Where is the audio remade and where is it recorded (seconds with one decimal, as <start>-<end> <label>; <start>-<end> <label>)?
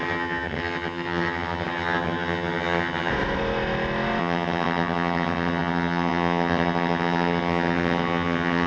0.0-3.1 remade; 3.1-4.2 recorded; 4.2-8.7 remade